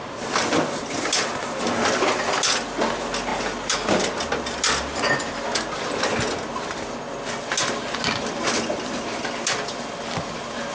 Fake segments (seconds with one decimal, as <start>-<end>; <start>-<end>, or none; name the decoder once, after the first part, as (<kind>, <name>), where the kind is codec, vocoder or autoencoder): none